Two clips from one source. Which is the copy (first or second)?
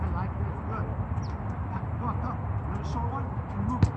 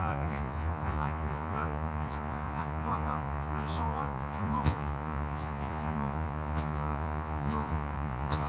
second